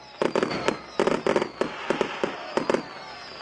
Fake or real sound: real